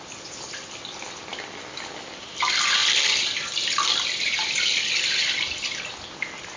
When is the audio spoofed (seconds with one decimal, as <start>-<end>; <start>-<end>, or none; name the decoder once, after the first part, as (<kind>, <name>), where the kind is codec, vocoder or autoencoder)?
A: 1.3-2.3 (vocoder, BigVGAN v2); 2.8-3.7; 4.4-5.2